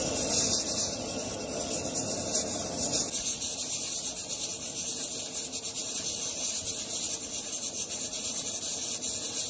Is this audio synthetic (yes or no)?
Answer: no